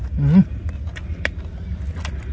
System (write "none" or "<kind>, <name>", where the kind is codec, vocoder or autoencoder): none